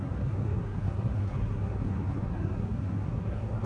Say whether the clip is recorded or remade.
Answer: remade